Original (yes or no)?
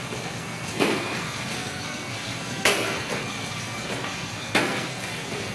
no